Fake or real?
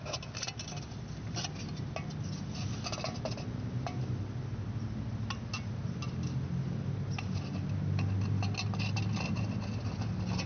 real